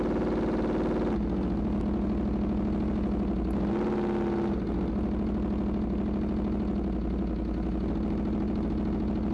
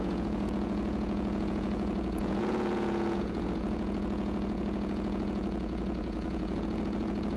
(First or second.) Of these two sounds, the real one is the first